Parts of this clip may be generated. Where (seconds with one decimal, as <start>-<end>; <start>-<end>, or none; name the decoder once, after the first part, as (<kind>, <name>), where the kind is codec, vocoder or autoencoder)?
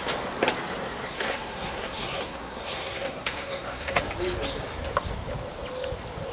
1.1-4.0 (codec, SNAC)